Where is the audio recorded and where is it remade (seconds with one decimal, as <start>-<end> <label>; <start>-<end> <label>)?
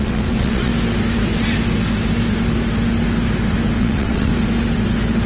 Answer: 0.0-0.7 remade; 0.7-3.8 recorded; 3.8-4.3 remade; 4.3-5.3 recorded